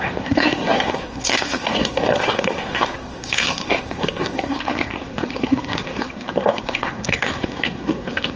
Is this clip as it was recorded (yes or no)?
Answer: no